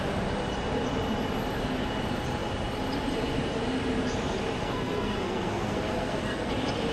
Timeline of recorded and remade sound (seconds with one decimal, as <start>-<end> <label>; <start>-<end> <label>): 0.0-4.6 recorded; 4.6-6.5 remade; 6.5-6.9 recorded